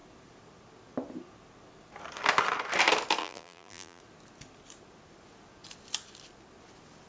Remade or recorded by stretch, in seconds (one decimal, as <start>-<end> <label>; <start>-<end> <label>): 0.0-3.2 recorded; 3.2-4.0 remade; 4.0-7.1 recorded